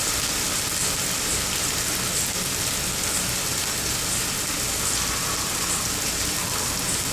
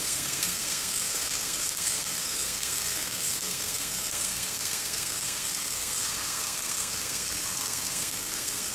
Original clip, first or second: first